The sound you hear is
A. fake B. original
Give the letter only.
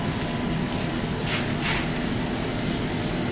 B